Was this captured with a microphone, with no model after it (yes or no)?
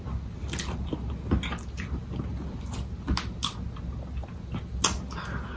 yes